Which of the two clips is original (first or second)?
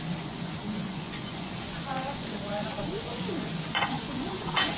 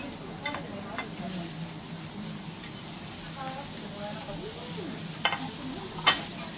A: second